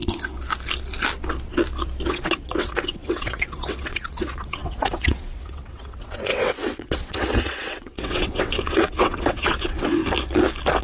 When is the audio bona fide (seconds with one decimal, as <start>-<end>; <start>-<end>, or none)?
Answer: 0.0-2.1; 10.0-10.8